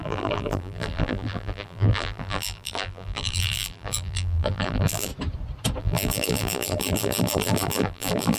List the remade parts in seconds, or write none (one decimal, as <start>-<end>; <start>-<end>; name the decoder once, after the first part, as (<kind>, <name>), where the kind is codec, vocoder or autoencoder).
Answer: 0.0-5.1 (vocoder, BigVGAN v2); 5.8-8.4